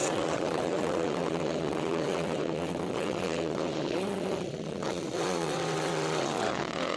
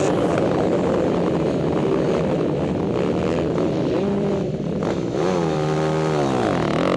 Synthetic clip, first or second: first